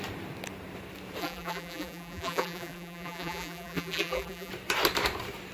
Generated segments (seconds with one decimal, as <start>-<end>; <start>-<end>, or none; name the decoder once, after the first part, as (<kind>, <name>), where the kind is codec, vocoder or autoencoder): 1.2-4.5 (vocoder, BigVGAN v2)